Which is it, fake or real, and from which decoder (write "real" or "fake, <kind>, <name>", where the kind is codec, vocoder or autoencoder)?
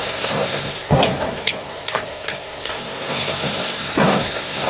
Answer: fake, codec, SNAC